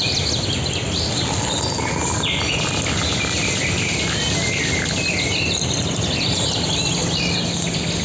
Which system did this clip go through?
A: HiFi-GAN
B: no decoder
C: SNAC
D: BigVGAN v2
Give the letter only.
B